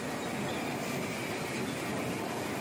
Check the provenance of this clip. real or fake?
real